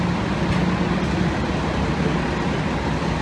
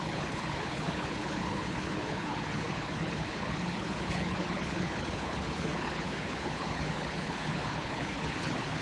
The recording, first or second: first